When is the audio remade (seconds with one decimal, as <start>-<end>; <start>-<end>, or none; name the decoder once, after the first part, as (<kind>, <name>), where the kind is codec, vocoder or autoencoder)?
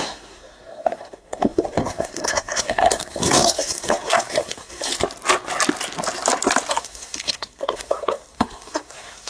0.0-4.9 (codec, SNAC); 6.7-9.3